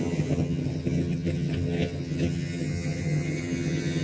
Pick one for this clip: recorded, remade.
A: remade